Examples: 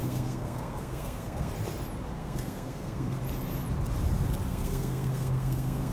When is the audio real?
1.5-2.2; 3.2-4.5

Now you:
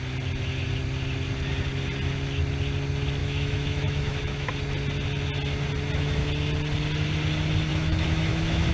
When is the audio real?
0.0-3.2; 4.5-7.7

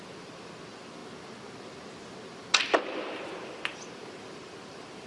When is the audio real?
1.0-2.6